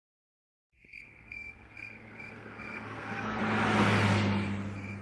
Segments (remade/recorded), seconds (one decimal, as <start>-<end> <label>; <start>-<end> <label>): 0.0-3.4 remade; 3.4-5.0 recorded